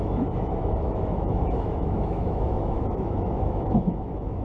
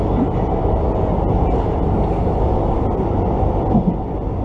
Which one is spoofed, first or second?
first